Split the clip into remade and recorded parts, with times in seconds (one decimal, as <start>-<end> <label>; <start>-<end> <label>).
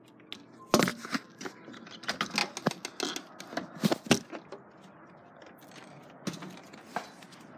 0.0-7.6 recorded